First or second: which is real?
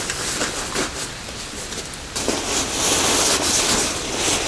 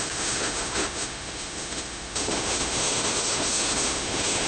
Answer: first